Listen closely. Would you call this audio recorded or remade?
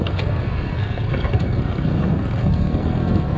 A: remade